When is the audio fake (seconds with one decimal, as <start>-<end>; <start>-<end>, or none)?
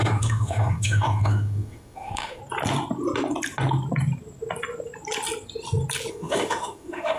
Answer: 0.0-2.4; 6.1-7.2